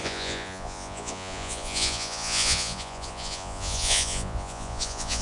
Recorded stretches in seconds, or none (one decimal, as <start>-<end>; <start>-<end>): none